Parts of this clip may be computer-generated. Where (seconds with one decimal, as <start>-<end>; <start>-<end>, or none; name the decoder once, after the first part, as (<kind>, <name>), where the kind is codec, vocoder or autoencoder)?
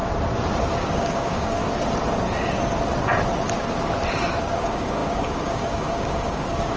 0.9-1.6 (codec, DAC); 4.4-6.8